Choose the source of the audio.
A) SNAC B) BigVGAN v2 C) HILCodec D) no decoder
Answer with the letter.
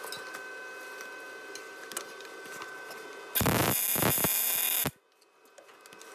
D